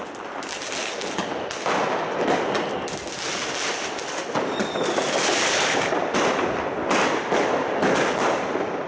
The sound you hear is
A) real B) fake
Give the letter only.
A